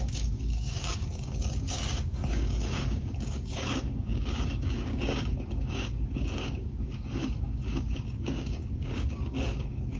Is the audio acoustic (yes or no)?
no